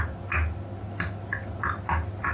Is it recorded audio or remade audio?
recorded